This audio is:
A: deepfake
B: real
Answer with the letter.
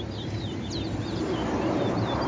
B